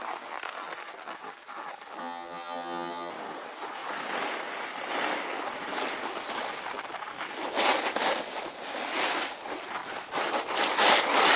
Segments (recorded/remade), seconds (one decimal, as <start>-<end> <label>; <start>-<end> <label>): 0.0-2.0 recorded; 2.0-3.1 remade; 3.1-11.4 recorded